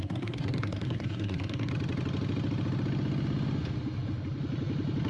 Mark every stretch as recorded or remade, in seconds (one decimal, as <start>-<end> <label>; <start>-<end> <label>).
0.0-1.7 remade; 1.7-5.1 recorded